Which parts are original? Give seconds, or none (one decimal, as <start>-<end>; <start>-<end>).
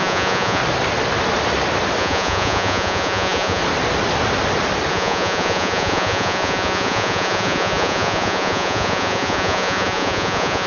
0.6-2.0; 3.6-4.9